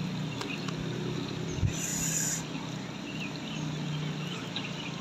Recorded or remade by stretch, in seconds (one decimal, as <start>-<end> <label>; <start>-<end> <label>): 0.0-5.0 recorded